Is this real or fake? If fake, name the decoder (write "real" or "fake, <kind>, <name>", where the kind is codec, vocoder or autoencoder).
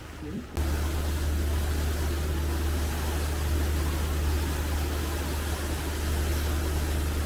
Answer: real